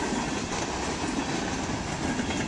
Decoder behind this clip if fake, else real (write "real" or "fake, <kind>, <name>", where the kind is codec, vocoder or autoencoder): real